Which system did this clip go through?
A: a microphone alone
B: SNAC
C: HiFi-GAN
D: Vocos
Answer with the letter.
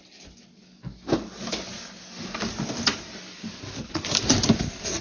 A